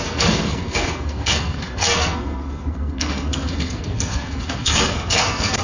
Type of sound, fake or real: fake